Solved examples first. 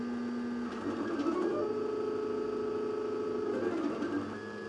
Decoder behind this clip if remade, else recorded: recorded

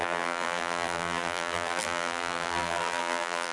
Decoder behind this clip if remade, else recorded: remade, vocoder, BigVGAN v2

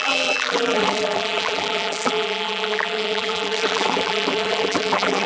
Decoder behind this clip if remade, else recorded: remade, vocoder, BigVGAN v2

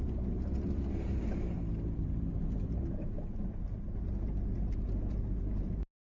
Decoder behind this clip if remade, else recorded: remade, vocoder, BigVGAN v2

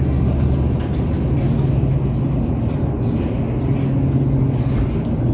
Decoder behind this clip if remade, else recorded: recorded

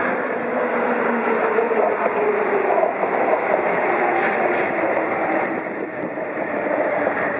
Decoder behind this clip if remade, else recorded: remade, vocoder, BigVGAN v2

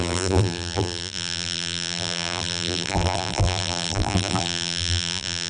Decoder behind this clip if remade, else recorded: remade, vocoder, BigVGAN v2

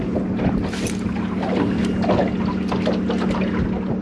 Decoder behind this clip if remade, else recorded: recorded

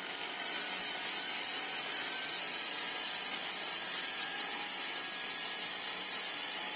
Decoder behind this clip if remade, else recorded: recorded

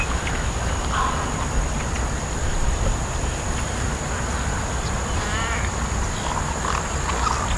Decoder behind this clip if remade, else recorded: remade, vocoder, BigVGAN v2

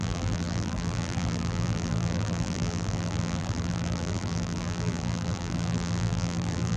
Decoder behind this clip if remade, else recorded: remade, vocoder, BigVGAN v2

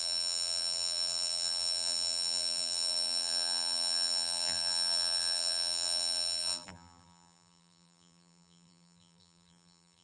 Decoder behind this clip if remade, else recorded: remade, vocoder, BigVGAN v2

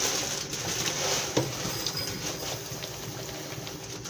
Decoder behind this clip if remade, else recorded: remade, vocoder, BigVGAN v2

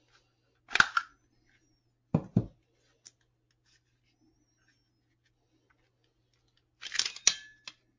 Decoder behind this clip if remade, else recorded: recorded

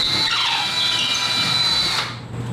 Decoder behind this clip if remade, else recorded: recorded